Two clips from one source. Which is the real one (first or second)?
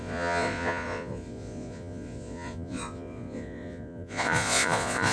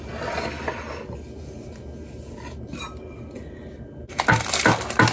second